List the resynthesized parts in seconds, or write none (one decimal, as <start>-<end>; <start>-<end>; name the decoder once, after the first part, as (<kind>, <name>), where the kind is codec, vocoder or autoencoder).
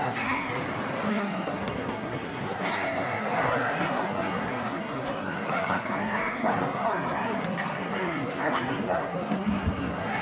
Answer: 0.0-0.6 (codec, SNAC); 1.1-10.2